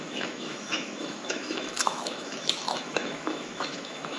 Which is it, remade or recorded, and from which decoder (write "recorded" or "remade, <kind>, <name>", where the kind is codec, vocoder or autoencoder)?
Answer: remade, autoencoder, DAC-VAE